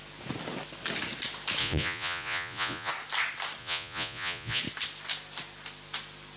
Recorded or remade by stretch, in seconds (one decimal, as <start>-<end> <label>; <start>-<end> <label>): 0.0-1.6 recorded; 1.6-2.9 remade; 2.9-3.6 recorded; 3.6-4.6 remade; 4.6-6.4 recorded